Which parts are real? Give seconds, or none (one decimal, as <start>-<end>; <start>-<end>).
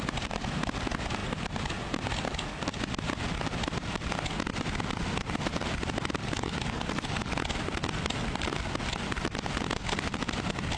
0.0-6.2; 7.3-10.8